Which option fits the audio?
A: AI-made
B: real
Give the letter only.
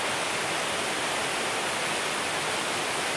B